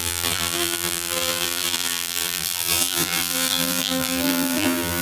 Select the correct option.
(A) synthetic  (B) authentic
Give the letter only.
A